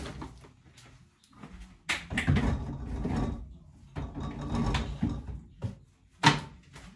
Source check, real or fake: real